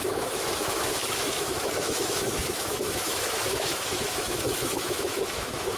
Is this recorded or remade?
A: remade